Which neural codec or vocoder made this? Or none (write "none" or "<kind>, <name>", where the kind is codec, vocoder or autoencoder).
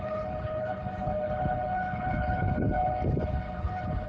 codec, HILCodec